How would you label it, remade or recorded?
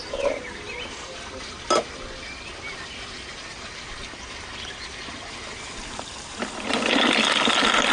recorded